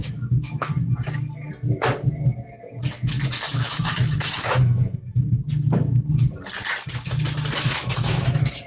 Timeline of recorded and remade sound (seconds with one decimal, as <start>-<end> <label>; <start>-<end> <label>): 0.0-0.7 remade; 0.7-3.5 recorded; 3.5-5.4 remade; 5.4-7.6 recorded; 7.6-8.7 remade